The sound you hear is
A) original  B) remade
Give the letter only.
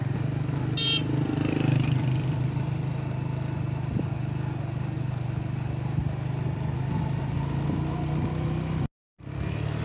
A